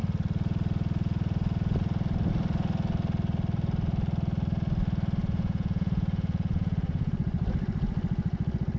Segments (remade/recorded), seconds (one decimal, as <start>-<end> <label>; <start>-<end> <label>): 0.0-5.2 recorded; 5.2-7.1 remade; 7.1-8.8 recorded

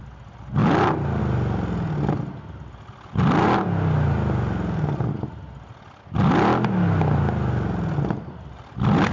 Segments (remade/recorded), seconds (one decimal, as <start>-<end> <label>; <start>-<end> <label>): 0.0-9.1 recorded